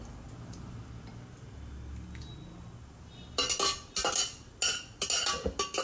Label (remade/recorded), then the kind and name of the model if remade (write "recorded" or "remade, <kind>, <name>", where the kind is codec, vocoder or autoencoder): recorded